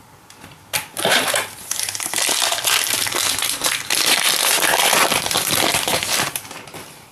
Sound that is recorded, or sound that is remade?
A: remade